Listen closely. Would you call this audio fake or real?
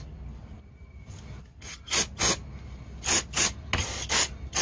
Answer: real